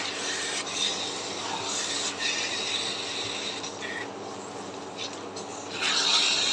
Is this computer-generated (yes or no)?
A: no